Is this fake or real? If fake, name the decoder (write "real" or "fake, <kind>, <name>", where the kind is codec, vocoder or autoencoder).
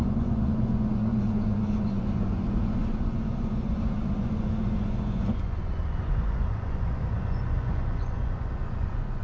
fake, vocoder, Vocos